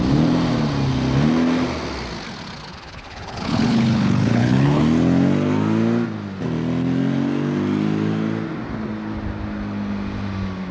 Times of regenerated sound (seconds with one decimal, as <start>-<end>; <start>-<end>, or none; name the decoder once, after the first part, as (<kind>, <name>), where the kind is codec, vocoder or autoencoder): 2.7-4.8 (codec, HILCodec)